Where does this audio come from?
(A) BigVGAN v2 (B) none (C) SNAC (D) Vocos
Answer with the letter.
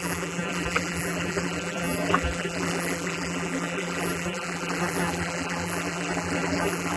A